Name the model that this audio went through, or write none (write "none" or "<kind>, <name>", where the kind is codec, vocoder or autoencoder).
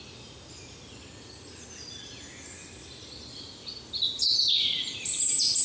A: none